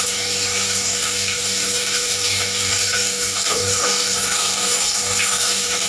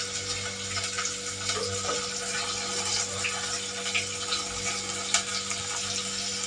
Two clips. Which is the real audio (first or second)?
second